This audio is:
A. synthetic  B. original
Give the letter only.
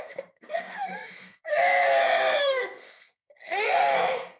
A